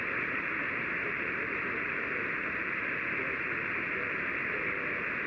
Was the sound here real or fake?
fake